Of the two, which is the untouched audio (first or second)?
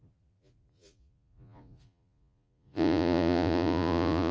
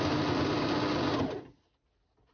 second